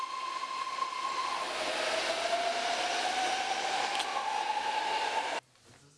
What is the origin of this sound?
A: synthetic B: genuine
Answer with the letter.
B